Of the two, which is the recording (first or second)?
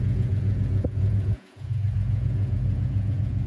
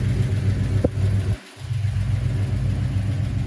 second